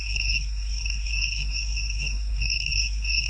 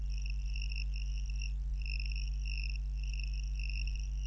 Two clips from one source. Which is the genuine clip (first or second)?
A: second